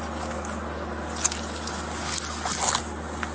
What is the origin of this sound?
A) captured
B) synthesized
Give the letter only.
A